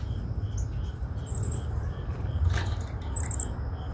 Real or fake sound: real